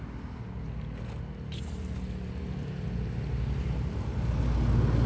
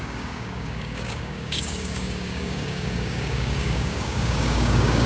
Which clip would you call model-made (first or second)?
second